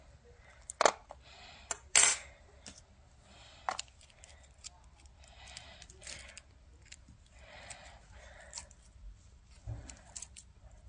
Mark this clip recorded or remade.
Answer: recorded